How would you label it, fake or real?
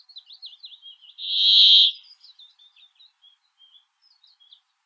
real